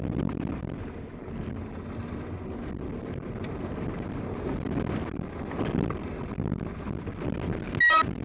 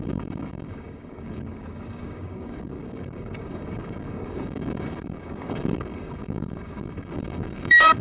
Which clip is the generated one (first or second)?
second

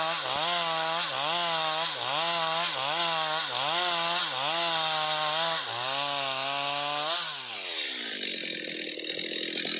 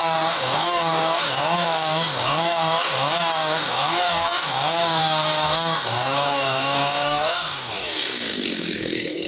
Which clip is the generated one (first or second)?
second